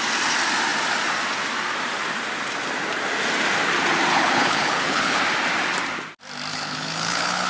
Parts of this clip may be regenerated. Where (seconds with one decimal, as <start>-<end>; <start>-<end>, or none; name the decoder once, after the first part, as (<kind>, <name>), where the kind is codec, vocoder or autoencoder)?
4.1-5.2 (codec, HILCodec); 6.5-7.5